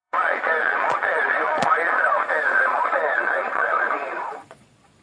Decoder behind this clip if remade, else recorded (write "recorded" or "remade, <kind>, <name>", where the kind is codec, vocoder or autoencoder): remade, vocoder, Vocos